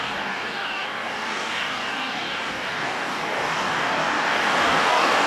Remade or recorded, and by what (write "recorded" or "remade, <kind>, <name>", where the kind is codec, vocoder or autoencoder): remade, codec, DAC